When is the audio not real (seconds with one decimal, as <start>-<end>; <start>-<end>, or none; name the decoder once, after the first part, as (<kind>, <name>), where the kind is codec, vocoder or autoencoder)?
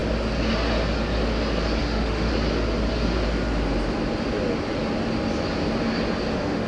1.8-2.3 (autoencoder, DAC-VAE); 6.3-6.7